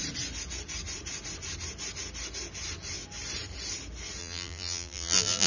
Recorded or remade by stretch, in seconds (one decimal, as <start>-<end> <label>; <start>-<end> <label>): 0.0-4.2 recorded; 4.2-5.5 remade